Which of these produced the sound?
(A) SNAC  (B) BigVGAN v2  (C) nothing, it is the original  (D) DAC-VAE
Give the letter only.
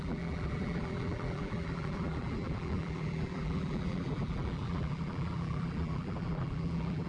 B